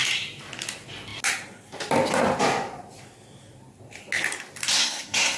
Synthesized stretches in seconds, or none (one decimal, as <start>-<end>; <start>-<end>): 4.7-5.4

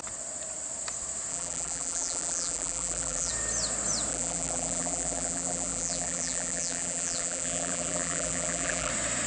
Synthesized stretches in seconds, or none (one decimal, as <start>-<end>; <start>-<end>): 1.3-3.3; 4.1-8.9

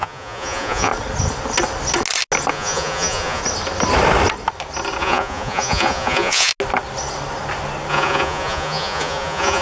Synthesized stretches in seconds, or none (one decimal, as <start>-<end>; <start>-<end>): 0.0-0.9; 2.5-3.4; 5.0-6.5; 7.9-9.6

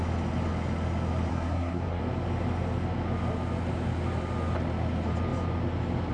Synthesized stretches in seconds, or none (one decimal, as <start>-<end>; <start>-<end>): 1.3-2.0